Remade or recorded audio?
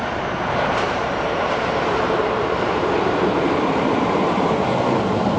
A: remade